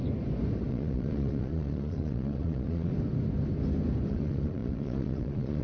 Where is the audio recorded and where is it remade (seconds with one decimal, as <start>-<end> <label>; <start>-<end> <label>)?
0.0-0.7 recorded; 0.7-2.9 remade; 2.9-4.1 recorded; 4.1-5.6 remade